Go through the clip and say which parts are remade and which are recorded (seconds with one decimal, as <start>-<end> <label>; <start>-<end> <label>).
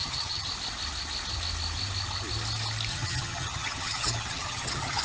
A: 0.0-0.5 remade; 0.5-2.9 recorded; 2.9-5.0 remade